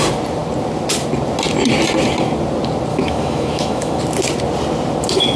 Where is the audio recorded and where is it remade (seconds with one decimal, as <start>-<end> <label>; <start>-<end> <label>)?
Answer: 0.0-2.9 recorded; 2.9-4.0 remade; 4.0-5.4 recorded